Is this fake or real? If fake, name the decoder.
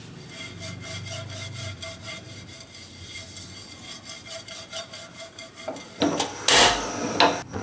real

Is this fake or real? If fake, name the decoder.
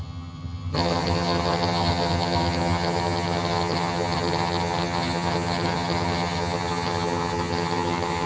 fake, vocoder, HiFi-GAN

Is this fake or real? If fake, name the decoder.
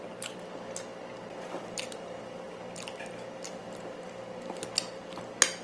real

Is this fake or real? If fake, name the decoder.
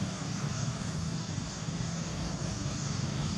fake, codec, DAC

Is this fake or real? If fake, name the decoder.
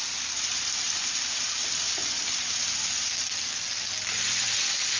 real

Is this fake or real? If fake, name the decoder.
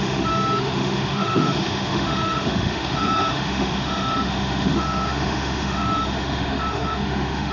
fake, autoencoder, DAC-VAE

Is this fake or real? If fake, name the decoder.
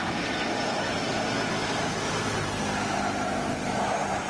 real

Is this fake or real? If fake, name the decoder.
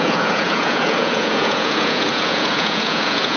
fake, vocoder, Vocos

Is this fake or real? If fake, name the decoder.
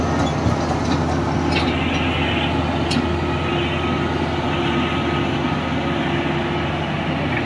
real